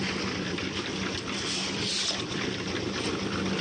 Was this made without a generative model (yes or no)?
yes